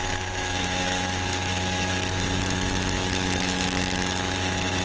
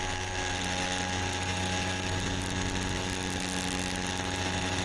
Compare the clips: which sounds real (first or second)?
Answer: second